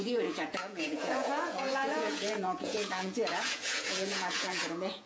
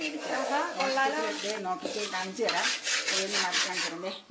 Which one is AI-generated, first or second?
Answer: first